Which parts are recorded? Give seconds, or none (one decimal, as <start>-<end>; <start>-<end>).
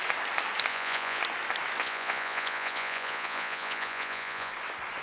0.0-0.7; 1.2-1.8; 4.5-5.0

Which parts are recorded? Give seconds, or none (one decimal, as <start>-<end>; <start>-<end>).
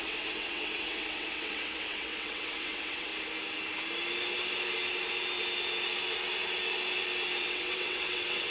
3.1-7.4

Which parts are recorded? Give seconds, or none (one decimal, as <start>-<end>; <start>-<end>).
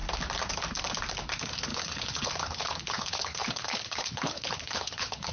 0.0-1.7